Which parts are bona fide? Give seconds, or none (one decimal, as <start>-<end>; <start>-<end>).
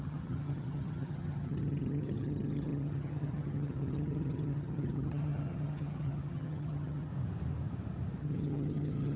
7.1-8.2